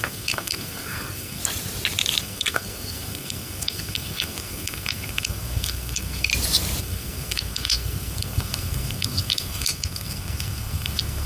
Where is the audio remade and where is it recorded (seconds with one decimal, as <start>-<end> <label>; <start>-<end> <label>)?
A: 0.0-1.4 remade; 1.4-2.2 recorded; 2.2-6.3 remade; 6.3-6.8 recorded; 6.8-11.3 remade